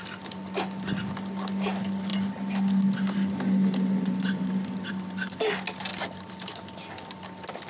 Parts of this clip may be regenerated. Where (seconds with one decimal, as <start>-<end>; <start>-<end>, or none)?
none